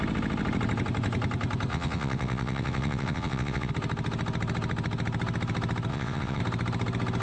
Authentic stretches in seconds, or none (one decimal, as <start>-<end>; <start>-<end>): 0.0-1.7; 3.7-5.9; 6.4-7.2